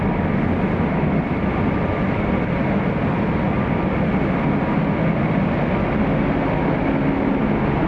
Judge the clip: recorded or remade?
recorded